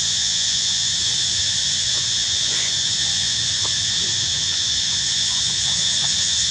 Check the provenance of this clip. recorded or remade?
remade